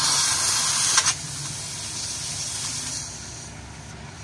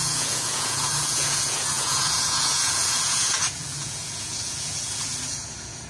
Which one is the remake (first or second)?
second